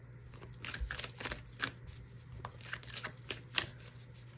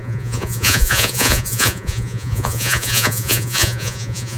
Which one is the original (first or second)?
first